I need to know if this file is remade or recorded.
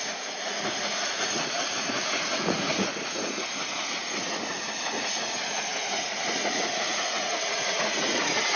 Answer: remade